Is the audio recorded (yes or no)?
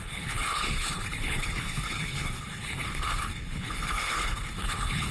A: no